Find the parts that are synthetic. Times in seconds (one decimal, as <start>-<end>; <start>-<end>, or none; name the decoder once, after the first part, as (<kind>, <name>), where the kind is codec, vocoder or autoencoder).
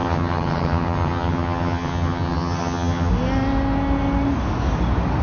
0.0-3.1 (vocoder, HiFi-GAN)